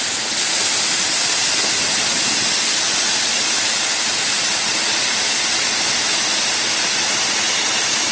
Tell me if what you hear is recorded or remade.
recorded